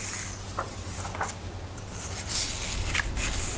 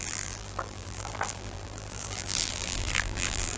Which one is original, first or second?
first